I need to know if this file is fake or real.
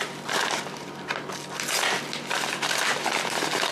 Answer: real